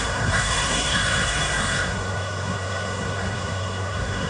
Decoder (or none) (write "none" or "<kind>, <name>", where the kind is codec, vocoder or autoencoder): codec, SNAC